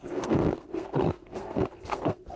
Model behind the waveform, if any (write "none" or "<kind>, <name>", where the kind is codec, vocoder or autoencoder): codec, SNAC